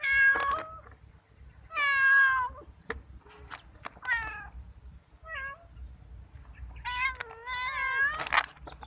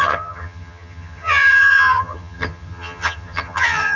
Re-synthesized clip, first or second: second